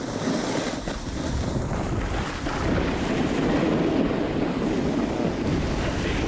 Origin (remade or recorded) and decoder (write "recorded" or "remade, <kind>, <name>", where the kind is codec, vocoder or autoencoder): recorded